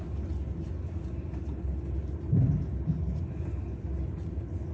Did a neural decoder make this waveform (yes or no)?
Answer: no